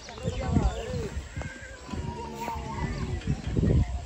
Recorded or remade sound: recorded